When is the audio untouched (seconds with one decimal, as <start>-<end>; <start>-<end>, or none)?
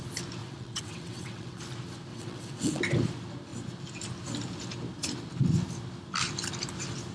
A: 0.0-0.4; 1.6-2.1; 2.8-7.1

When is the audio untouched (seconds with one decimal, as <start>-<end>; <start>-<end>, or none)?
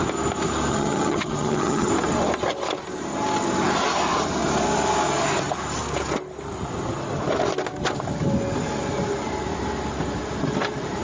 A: 0.0-0.7; 1.9-11.0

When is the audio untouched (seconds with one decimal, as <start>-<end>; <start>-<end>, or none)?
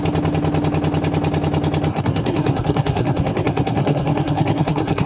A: 0.0-1.9